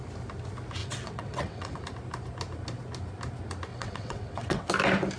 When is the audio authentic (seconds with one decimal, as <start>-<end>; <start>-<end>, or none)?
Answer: 0.0-0.8; 1.8-3.7; 4.7-5.2